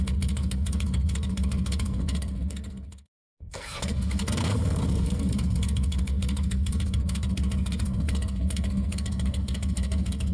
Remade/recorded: remade